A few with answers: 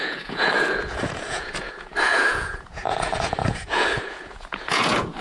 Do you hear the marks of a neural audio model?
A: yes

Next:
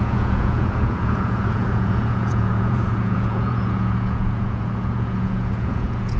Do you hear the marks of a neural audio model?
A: yes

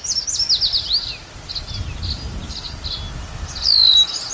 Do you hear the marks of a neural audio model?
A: no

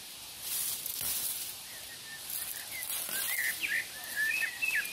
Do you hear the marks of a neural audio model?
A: no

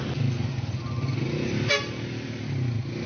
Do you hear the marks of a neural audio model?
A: no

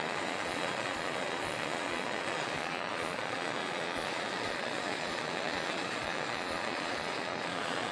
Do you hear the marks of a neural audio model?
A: yes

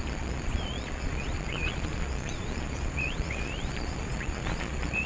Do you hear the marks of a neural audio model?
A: yes